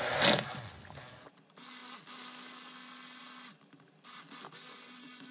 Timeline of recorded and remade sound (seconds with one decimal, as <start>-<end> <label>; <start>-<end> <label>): 0.0-5.3 recorded